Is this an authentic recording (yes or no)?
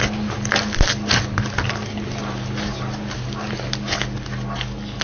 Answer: yes